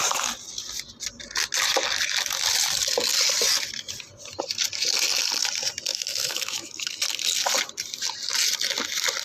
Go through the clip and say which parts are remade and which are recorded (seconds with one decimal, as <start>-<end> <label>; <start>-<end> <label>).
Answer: 0.0-5.9 recorded; 5.9-6.9 remade; 6.9-9.2 recorded